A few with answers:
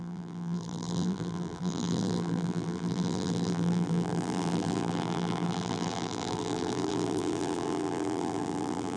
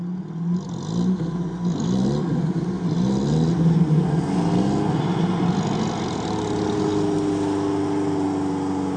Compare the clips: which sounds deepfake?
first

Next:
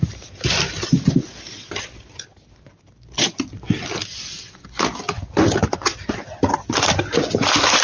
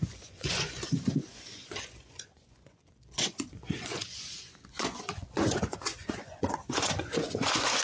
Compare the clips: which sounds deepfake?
second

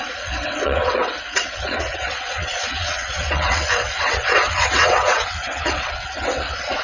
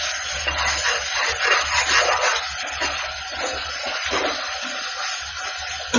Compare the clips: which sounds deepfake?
first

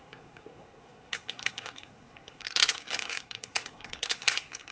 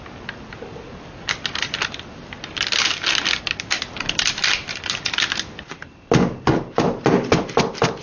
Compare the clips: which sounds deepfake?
first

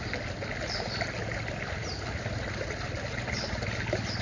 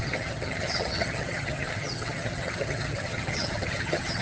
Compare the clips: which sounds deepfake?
second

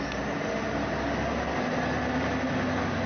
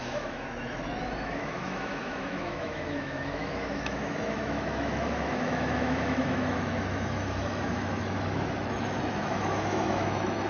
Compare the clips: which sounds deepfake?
second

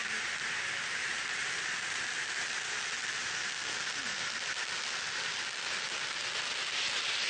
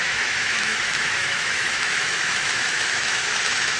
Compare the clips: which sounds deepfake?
second